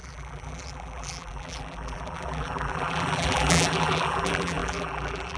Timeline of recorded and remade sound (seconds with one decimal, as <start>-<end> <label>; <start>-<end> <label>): 0.0-5.4 remade